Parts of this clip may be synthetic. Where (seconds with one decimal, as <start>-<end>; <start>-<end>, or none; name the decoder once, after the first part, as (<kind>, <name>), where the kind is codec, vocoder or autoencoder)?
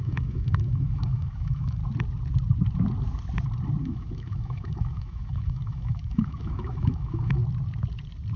0.0-1.8 (autoencoder, DAC-VAE); 3.8-7.4